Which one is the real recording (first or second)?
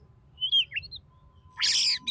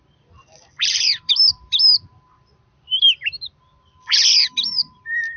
first